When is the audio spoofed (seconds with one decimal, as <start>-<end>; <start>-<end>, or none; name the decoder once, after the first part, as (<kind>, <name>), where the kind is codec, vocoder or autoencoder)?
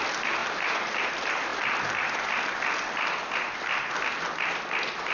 none